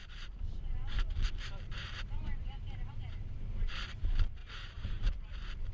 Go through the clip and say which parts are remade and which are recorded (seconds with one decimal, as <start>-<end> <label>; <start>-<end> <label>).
0.0-5.7 remade